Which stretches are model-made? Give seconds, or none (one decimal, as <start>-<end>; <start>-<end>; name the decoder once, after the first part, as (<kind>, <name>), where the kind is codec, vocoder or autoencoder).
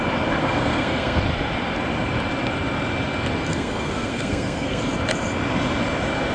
0.4-1.2 (codec, SNAC); 3.5-4.8